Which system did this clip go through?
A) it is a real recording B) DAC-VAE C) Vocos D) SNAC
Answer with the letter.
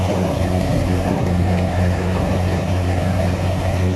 D